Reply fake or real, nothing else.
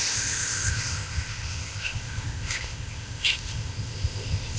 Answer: fake